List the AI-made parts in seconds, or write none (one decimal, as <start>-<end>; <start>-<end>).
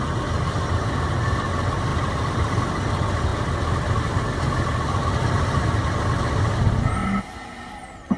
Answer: 1.9-2.6